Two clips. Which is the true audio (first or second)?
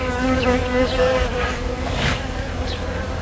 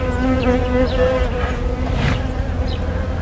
second